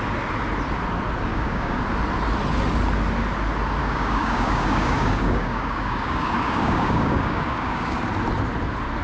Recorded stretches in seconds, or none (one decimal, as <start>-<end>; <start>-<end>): 0.0-1.3; 1.8-3.8; 8.0-9.0